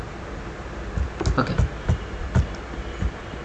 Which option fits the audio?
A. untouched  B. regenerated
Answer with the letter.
A